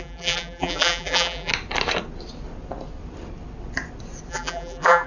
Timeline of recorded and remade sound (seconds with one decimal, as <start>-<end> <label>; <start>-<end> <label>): 0.0-1.5 remade; 1.5-4.3 recorded; 4.3-5.1 remade